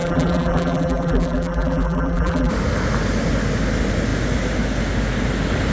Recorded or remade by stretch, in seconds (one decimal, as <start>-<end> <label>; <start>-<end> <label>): 0.0-2.5 remade; 2.5-5.7 recorded